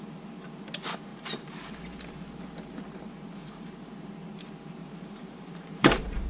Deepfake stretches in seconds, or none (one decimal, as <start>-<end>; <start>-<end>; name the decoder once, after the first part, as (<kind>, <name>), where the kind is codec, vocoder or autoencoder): 1.1-1.7 (vocoder, BigVGAN v2); 3.4-3.9; 4.8-6.3